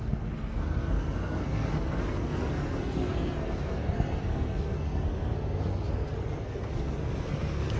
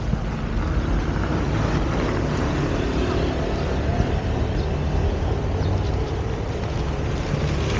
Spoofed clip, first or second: first